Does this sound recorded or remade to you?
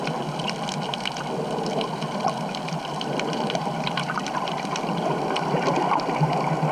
recorded